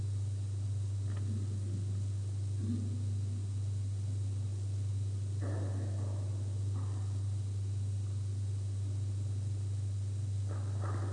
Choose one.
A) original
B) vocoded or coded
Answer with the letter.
A